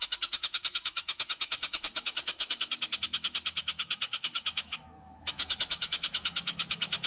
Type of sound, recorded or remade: remade